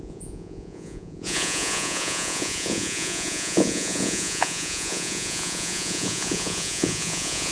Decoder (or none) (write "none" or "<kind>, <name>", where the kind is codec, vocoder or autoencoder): vocoder, Vocos